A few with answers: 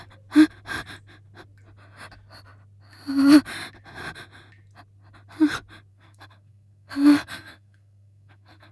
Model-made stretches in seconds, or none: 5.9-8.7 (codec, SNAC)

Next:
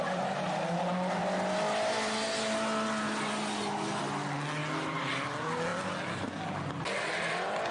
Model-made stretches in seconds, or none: none

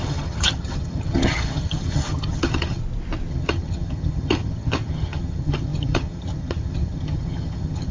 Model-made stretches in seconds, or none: 0.0-2.8 (vocoder, HiFi-GAN); 3.3-7.9

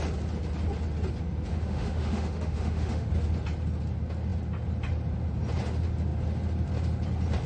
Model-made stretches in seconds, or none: 1.5-3.1 (autoencoder, DAC-VAE)

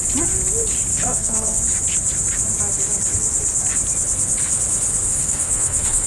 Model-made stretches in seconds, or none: 0.9-1.6 (codec, SNAC); 5.1-6.1

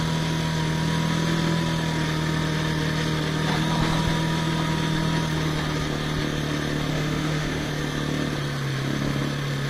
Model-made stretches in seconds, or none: 6.9-7.7 (autoencoder, DAC-VAE)